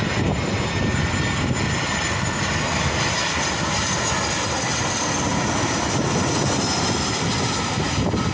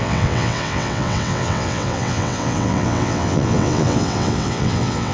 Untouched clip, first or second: first